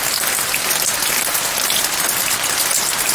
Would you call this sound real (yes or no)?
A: yes